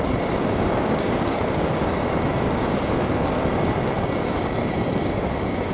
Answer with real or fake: fake